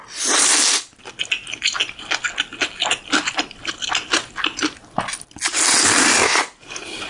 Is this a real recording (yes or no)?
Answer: yes